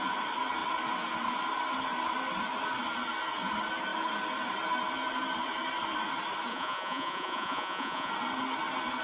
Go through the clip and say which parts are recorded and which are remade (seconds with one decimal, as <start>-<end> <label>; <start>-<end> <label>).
0.0-6.5 recorded; 6.5-8.1 remade; 8.1-9.0 recorded